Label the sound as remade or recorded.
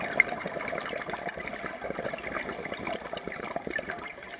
recorded